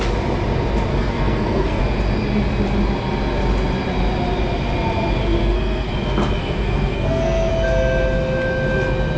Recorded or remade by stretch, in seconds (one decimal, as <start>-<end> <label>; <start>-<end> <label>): 0.0-0.9 recorded; 0.9-1.8 remade; 1.8-5.4 recorded; 5.4-5.9 remade; 5.9-6.4 recorded; 6.4-7.5 remade; 7.5-9.2 recorded